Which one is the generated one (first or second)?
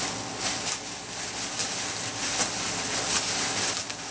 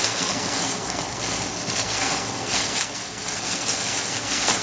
second